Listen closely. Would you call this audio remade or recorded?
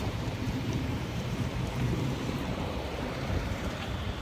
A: remade